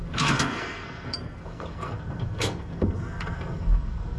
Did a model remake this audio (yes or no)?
yes